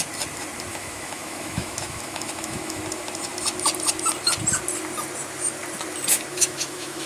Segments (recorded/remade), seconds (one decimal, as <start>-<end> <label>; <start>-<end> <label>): 0.0-0.7 recorded; 0.7-2.8 remade; 2.8-6.3 recorded; 6.3-7.1 remade

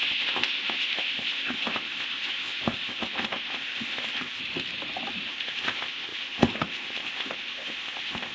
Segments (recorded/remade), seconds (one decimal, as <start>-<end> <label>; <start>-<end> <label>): 0.0-4.4 remade; 4.4-5.3 recorded; 5.3-8.3 remade